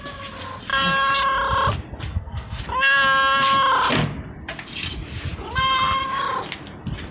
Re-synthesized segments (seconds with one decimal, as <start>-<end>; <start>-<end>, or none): 2.1-2.6